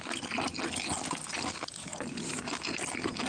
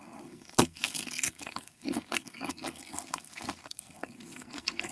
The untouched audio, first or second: first